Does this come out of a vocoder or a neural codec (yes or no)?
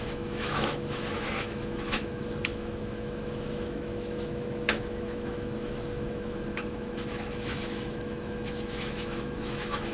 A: yes